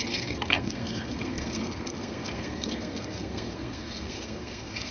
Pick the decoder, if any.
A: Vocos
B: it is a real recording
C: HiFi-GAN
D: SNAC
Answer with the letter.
D